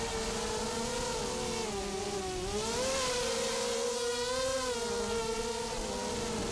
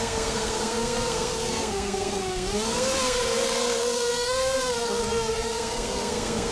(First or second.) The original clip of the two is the first